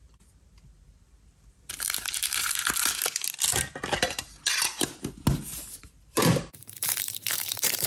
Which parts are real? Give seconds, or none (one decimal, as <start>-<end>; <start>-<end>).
2.6-5.8